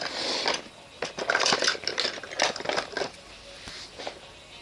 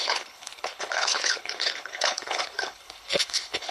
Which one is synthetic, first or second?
second